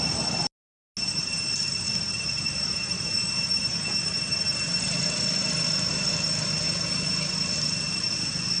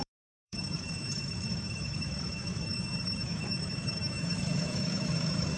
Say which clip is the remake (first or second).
second